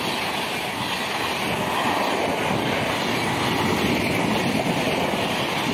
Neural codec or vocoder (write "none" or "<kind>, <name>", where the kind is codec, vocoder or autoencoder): none